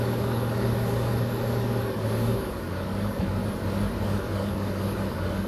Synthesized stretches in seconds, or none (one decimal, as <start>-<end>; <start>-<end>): 0.0-3.4; 4.0-5.5

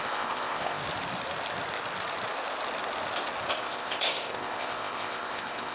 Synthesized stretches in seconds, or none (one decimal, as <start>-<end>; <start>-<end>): 0.0-0.8; 3.5-5.7

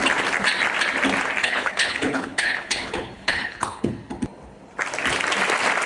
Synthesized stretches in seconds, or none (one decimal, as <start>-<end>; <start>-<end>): 1.4-3.9

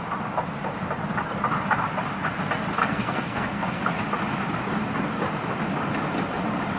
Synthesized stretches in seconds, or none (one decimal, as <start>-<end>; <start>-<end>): 2.8-3.8

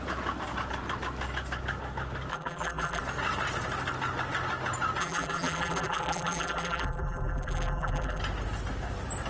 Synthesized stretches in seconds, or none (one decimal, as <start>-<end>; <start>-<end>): 2.3-3.0; 5.0-8.2